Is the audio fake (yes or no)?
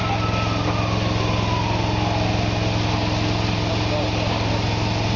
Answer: no